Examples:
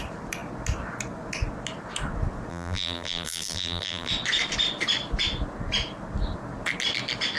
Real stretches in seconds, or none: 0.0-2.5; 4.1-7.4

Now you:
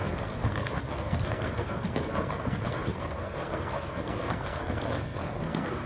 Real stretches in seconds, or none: none

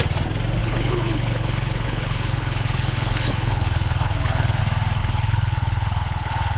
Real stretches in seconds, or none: 0.0-0.6; 4.6-5.0

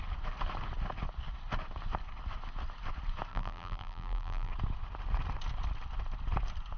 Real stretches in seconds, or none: 0.0-3.3; 4.5-6.8

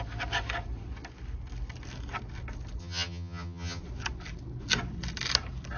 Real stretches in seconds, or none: 0.0-2.8; 3.8-5.8